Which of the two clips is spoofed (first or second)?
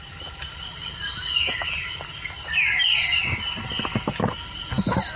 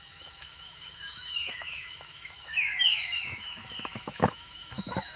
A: second